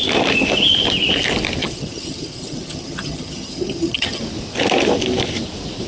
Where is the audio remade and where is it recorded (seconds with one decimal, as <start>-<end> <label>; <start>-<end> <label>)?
0.0-1.6 recorded; 1.6-4.2 remade; 4.2-5.9 recorded